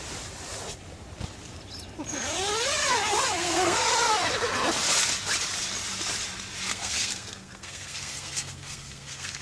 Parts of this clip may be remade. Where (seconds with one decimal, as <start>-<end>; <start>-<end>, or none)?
3.4-3.9; 6.7-9.4